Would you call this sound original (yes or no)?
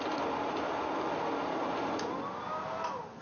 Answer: yes